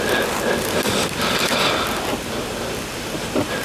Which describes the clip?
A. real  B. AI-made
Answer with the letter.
A